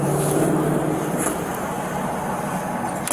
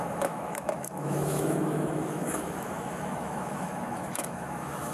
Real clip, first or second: first